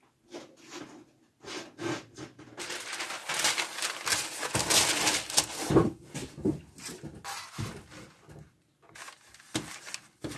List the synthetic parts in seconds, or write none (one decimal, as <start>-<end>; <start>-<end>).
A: none